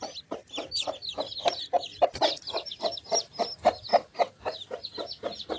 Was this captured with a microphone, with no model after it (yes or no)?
yes